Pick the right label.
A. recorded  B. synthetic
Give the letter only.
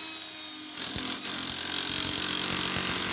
A